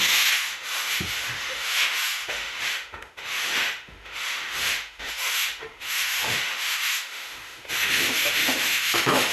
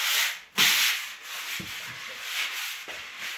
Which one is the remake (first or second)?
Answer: first